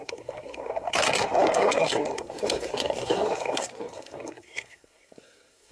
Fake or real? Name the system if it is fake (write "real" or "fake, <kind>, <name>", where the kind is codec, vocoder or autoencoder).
fake, codec, SNAC